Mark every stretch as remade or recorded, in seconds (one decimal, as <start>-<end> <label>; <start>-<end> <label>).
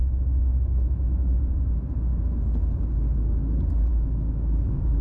0.0-1.4 remade; 1.4-3.9 recorded; 3.9-5.0 remade